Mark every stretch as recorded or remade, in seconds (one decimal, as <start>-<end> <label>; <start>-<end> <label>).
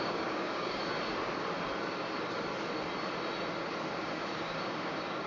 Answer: 0.0-0.8 remade; 0.8-4.0 recorded; 4.0-5.3 remade